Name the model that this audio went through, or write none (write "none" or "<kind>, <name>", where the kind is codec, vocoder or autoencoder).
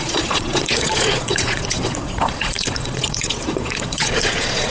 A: vocoder, Vocos